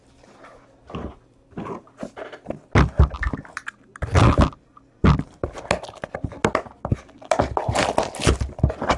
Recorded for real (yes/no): yes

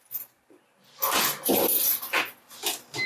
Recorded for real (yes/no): yes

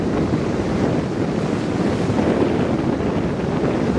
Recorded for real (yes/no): yes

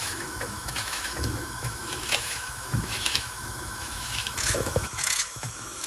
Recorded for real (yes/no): no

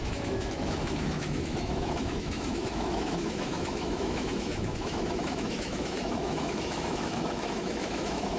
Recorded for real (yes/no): no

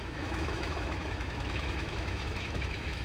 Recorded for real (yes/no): no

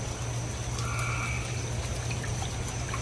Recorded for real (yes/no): yes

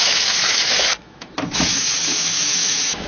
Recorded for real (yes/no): no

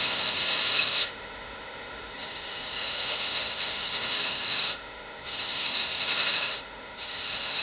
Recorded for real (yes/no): no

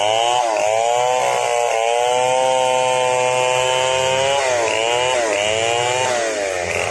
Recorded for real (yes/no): yes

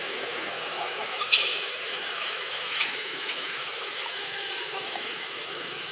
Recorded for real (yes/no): no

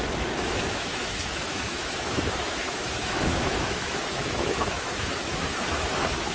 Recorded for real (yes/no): no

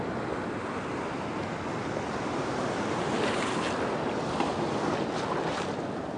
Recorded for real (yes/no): yes